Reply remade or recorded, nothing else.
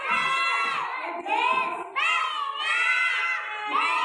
recorded